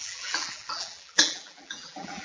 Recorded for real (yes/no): no